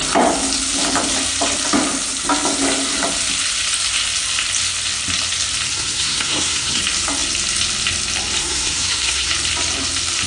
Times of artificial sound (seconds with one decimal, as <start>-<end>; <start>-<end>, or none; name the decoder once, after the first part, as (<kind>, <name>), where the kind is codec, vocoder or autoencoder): 5.7-6.8 (codec, SNAC); 8.4-9.3